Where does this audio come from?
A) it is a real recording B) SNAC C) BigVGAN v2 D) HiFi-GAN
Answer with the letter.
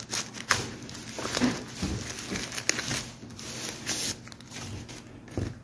A